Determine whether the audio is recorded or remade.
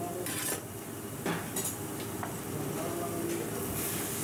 recorded